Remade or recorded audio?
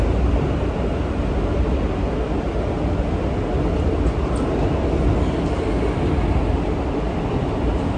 recorded